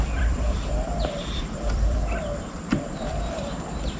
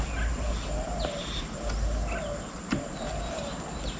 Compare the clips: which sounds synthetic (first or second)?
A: first